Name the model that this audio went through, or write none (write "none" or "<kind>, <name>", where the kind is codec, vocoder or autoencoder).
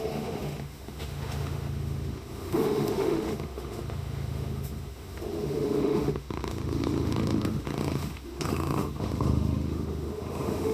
autoencoder, DAC-VAE